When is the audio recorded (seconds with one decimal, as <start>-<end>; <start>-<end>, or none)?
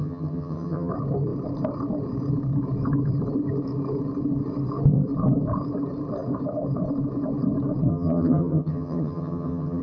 0.9-7.9